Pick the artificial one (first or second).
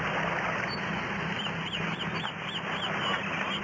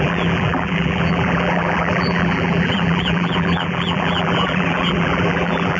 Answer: second